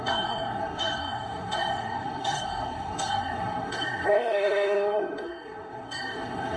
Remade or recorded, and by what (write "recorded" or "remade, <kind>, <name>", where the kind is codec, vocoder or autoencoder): remade, codec, SNAC